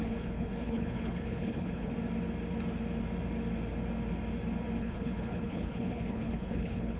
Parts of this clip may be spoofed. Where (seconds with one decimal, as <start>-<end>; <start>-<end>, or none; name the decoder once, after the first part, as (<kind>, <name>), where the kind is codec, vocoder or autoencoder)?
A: 0.0-1.9 (codec, HILCodec); 4.8-7.0